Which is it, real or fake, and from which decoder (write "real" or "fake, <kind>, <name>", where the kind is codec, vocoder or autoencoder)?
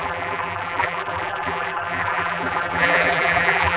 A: fake, vocoder, BigVGAN v2